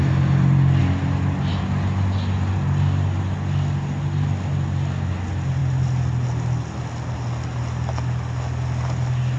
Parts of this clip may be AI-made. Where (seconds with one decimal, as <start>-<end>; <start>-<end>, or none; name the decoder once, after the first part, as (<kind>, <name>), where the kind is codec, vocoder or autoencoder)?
none